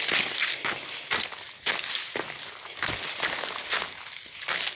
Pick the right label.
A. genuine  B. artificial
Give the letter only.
A